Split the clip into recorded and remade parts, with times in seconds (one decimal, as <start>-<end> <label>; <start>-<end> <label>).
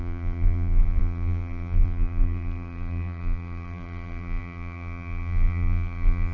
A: 0.0-6.3 remade